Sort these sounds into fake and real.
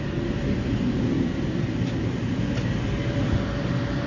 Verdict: real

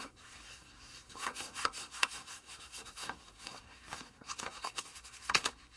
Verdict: fake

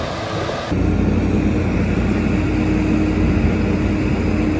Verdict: real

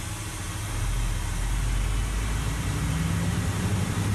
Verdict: real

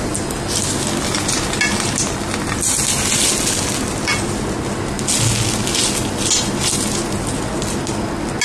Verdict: real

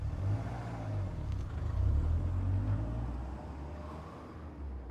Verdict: real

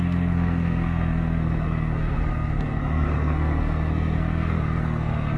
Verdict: fake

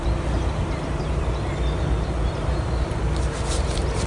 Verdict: real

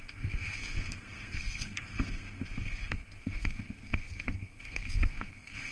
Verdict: fake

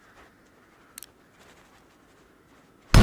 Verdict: real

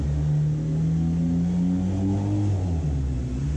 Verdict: real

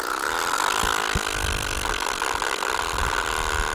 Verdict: real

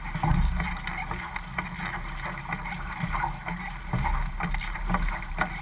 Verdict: real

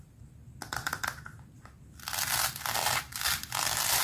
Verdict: real